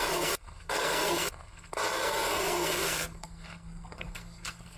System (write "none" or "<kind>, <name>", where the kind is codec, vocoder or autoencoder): codec, SNAC